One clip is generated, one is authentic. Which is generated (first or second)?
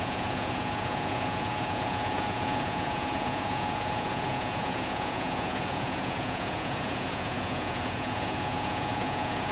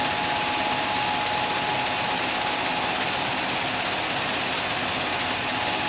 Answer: first